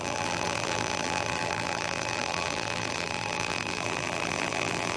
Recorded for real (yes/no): no